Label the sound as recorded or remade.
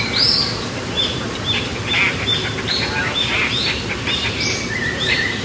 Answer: remade